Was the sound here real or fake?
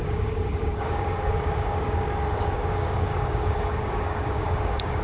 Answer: fake